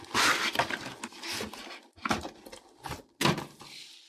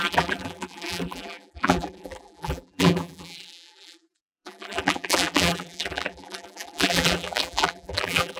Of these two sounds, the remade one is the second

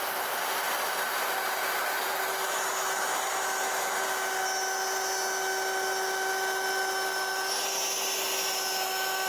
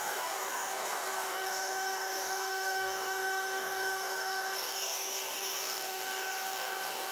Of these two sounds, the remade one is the second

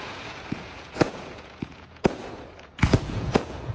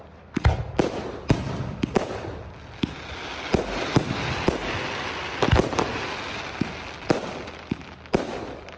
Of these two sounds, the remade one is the first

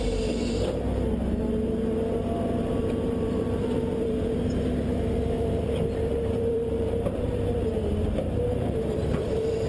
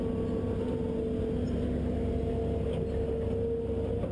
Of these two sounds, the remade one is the first